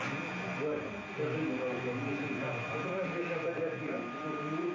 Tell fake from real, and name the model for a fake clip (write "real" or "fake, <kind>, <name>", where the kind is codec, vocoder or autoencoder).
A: real